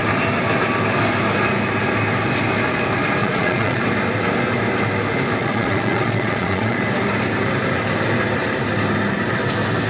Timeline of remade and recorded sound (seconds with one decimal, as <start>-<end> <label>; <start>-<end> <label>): 0.0-3.2 recorded; 3.2-3.8 remade; 3.8-5.4 recorded; 5.4-6.8 remade; 6.8-9.9 recorded